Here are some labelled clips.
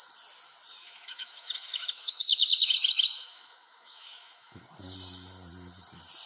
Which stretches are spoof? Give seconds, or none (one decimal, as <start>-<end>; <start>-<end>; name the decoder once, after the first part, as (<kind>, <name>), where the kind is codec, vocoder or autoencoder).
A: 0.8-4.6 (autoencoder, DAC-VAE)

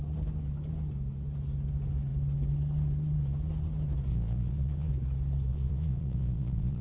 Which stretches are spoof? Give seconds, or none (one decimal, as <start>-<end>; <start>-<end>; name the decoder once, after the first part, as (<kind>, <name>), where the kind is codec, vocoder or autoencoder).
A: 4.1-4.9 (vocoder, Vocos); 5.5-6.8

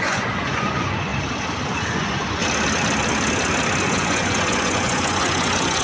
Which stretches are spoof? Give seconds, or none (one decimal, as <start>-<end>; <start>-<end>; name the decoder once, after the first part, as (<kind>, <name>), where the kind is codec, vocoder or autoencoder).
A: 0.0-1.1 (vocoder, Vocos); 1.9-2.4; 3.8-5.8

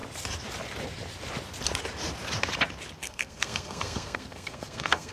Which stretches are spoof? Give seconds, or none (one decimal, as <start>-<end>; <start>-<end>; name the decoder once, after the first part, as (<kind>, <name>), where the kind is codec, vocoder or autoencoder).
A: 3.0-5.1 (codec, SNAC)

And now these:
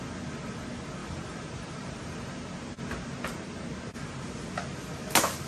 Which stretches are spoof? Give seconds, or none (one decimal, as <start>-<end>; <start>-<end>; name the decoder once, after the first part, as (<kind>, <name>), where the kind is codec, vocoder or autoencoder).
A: 1.0-4.3 (vocoder, BigVGAN v2)

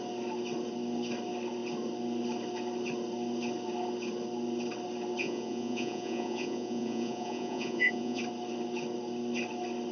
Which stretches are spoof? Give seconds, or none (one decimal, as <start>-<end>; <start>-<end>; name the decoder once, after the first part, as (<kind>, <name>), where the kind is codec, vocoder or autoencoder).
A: 5.2-8.2 (vocoder, Vocos)

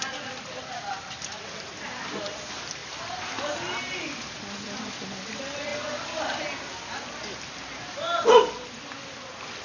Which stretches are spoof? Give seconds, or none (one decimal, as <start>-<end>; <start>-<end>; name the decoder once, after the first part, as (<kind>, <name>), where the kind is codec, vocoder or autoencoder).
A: none